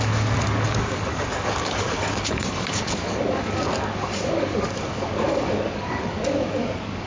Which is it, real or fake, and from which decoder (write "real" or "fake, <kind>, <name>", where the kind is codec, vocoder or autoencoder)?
fake, codec, DAC